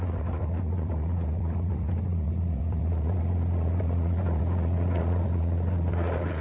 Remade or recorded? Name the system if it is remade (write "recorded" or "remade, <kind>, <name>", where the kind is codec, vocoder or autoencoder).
remade, vocoder, Vocos